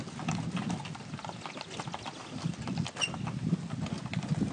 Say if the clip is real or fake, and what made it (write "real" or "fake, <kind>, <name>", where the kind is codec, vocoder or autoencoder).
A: real